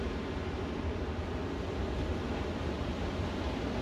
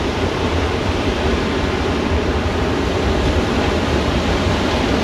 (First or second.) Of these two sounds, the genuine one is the first